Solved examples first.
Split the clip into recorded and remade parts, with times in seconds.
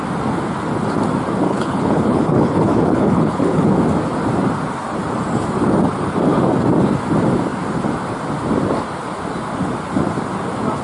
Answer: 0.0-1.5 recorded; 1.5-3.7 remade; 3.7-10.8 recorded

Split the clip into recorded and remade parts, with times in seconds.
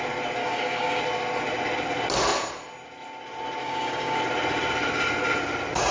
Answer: 0.0-0.4 recorded; 0.4-1.0 remade; 1.0-3.6 recorded; 3.6-4.2 remade; 4.2-5.9 recorded